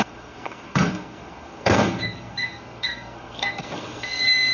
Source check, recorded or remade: remade